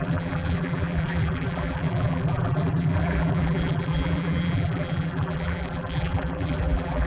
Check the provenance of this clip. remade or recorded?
remade